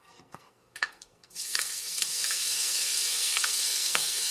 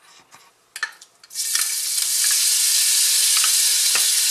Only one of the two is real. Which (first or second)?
second